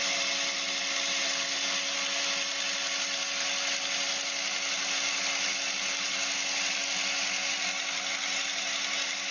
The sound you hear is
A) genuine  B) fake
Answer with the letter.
A